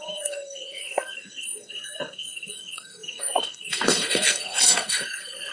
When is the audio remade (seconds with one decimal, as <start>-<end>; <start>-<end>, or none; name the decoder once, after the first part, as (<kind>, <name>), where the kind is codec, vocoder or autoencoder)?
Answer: 0.0-5.5 (codec, SNAC)